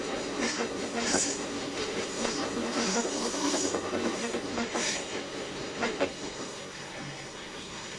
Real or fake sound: fake